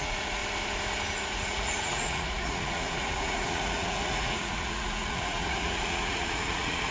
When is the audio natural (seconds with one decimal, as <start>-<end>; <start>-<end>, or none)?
0.4-1.1